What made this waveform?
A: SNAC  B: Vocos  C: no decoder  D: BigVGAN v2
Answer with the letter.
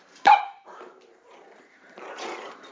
D